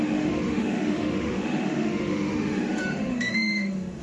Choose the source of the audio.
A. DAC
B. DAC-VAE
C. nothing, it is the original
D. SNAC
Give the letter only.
B